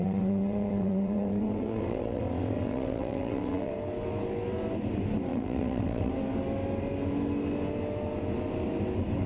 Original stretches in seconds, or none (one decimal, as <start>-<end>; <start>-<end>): 3.7-5.3; 6.1-9.3